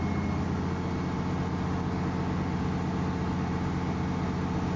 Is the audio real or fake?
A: real